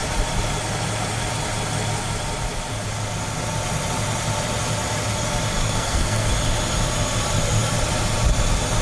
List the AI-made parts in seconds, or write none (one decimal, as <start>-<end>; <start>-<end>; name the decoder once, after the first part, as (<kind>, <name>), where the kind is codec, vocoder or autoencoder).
5.6-6.3 (codec, SNAC)